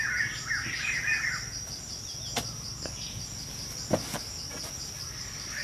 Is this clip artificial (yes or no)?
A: no